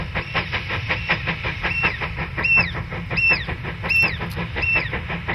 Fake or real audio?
real